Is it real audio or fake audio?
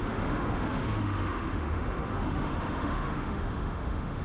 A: fake